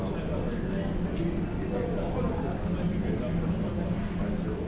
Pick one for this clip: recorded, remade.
recorded